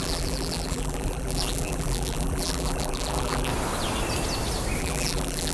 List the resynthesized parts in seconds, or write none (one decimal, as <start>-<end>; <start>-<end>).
0.0-3.5; 4.8-5.5